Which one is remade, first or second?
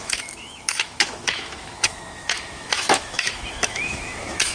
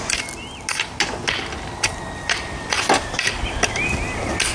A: first